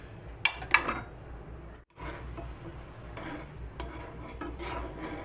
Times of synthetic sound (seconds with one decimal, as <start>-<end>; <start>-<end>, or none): none